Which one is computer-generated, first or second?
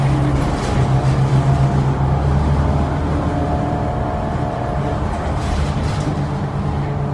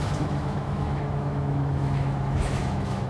second